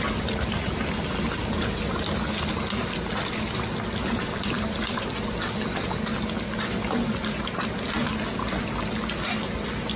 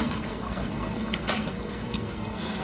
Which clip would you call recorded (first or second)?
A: first